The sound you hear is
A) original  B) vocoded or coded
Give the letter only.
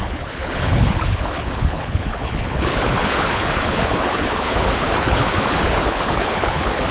B